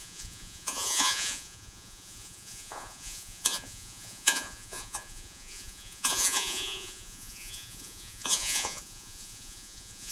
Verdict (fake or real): fake